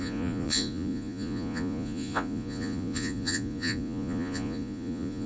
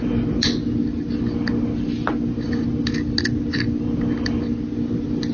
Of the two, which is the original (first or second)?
second